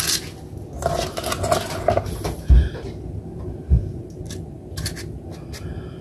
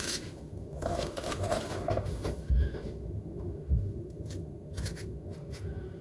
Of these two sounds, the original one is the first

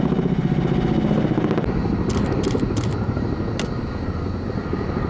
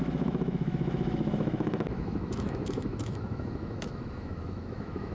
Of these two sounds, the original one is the first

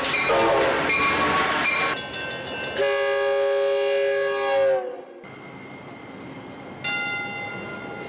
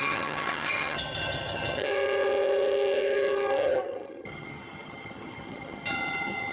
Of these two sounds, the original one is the first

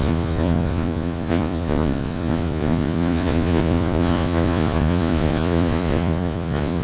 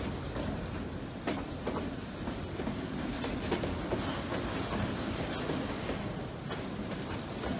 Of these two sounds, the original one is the second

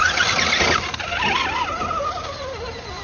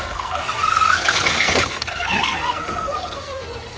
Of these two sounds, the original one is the first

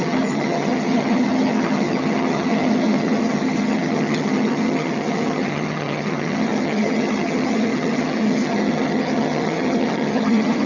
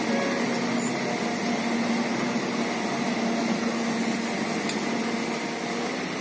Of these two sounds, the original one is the second